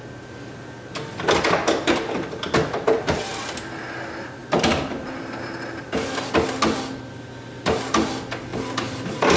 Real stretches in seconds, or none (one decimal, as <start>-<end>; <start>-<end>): 0.0-3.3; 4.0-4.4; 6.3-9.4